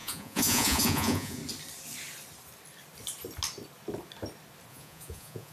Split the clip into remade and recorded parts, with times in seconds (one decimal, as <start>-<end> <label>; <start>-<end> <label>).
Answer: 0.0-1.4 remade; 1.4-4.7 recorded; 4.7-5.5 remade